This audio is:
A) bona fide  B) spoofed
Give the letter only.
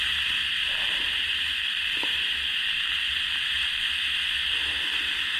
A